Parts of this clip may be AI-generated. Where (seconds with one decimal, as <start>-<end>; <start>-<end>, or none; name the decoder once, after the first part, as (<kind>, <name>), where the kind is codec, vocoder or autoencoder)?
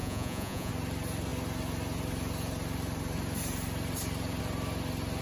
0.0-0.7 (vocoder, Vocos)